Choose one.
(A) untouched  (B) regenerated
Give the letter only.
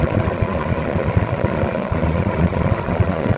B